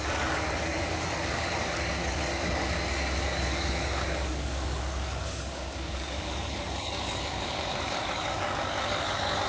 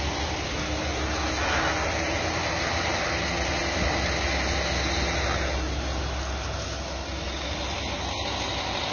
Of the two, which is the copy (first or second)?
first